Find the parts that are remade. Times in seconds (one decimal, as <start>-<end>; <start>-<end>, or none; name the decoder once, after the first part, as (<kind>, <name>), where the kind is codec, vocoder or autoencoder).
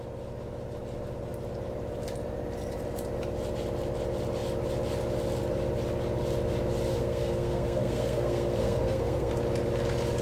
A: 6.9-9.3 (codec, SNAC)